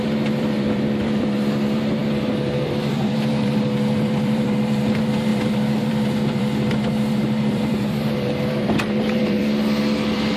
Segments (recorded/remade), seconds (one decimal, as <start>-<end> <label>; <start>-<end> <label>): 0.0-10.4 remade